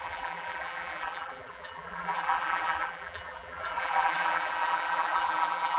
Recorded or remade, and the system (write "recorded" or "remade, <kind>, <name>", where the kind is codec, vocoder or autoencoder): remade, vocoder, BigVGAN v2